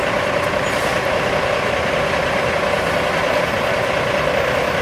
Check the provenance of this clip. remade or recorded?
recorded